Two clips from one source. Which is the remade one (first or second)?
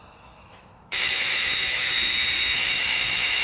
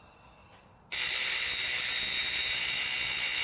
first